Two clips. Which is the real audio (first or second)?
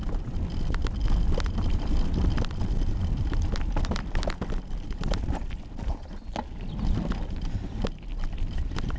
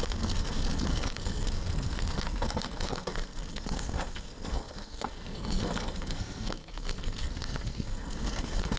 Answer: first